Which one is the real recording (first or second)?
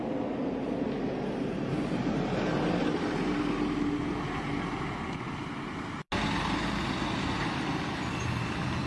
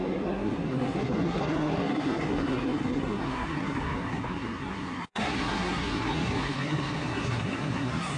first